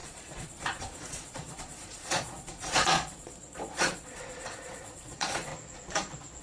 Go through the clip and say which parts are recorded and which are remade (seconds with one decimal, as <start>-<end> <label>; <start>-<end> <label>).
0.0-5.5 remade; 5.5-6.4 recorded